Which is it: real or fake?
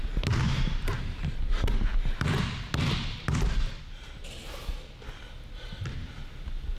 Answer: real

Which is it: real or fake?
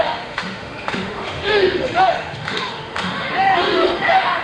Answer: fake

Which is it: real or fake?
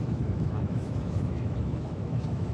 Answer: fake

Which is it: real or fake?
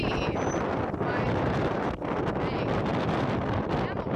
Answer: real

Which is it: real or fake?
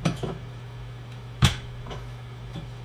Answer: fake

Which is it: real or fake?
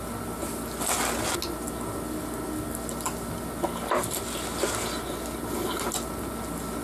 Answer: real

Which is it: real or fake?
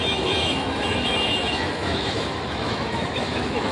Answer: fake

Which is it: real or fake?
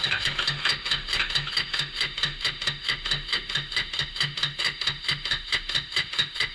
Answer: fake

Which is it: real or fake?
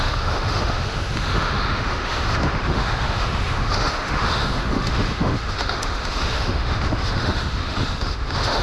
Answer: fake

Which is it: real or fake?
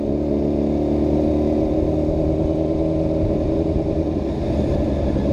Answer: real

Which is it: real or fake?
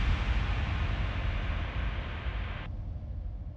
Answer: real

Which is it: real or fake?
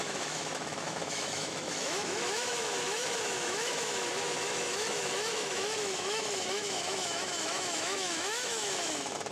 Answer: fake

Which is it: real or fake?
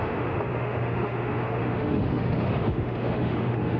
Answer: fake